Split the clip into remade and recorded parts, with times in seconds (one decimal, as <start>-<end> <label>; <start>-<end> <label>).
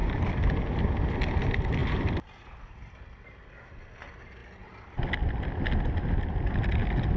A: 0.0-7.2 recorded